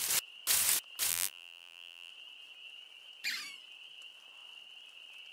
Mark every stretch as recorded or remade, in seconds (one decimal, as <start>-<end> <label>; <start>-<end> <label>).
0.0-1.1 recorded; 1.1-2.1 remade; 2.1-5.3 recorded